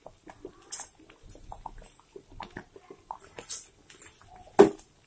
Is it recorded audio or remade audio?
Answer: recorded